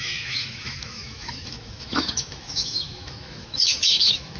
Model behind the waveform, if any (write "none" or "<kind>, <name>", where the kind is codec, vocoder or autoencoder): autoencoder, DAC-VAE